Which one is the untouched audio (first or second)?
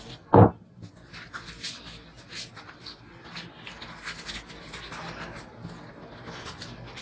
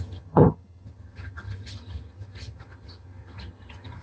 first